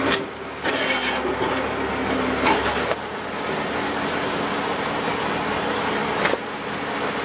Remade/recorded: recorded